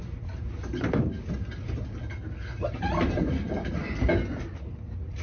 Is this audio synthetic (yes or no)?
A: no